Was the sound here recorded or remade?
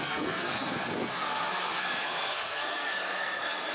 remade